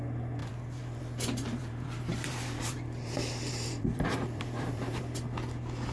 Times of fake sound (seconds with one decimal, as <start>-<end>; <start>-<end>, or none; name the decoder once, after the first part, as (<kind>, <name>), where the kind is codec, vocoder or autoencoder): 0.4-1.0 (vocoder, BigVGAN v2); 1.5-5.0